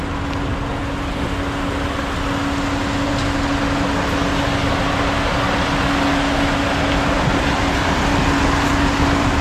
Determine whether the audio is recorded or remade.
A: recorded